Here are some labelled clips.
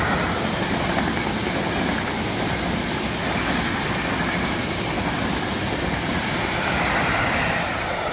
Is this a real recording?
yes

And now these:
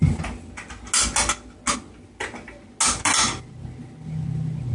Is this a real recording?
yes